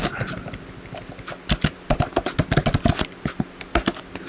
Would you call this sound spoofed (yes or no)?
no